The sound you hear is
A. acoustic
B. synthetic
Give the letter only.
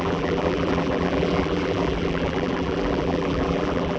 B